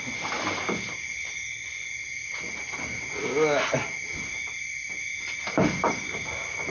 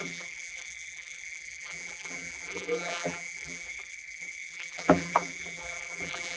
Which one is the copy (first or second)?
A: second